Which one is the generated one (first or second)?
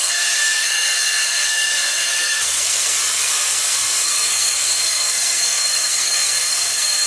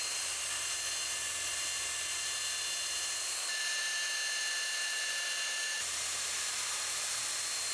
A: first